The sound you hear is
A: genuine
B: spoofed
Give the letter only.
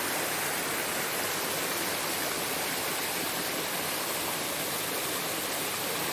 A